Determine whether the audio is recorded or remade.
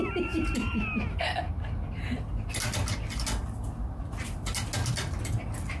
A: recorded